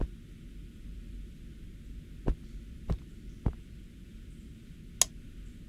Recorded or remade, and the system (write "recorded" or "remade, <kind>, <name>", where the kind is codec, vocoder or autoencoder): recorded